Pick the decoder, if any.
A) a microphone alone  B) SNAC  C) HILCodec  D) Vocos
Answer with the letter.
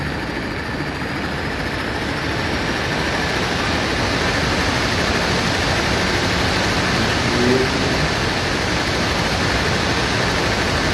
A